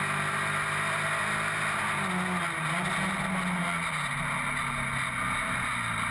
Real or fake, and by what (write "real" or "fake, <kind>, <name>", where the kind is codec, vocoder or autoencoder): real